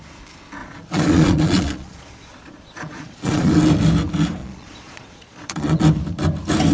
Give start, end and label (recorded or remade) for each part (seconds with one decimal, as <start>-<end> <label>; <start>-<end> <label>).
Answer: 0.0-0.6 recorded; 0.6-3.5 remade; 3.5-4.4 recorded; 4.4-5.8 remade; 5.8-6.7 recorded